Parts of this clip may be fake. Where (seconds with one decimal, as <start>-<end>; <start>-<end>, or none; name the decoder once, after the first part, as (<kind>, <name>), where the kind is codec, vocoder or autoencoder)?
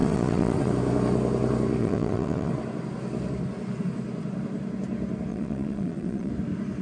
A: 0.0-0.7 (vocoder, Vocos); 1.8-2.5; 5.3-6.3